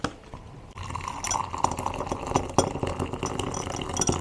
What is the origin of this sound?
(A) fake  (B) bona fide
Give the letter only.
B